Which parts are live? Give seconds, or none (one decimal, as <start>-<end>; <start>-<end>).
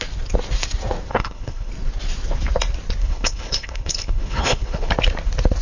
0.0-1.1; 1.7-3.0; 4.9-5.6